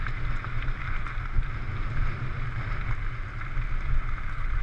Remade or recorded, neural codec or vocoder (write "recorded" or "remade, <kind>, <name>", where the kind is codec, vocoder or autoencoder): recorded